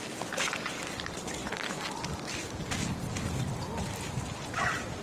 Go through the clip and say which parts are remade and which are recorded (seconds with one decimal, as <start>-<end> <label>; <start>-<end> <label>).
0.0-5.0 recorded